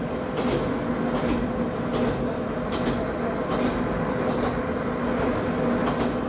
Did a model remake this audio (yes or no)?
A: no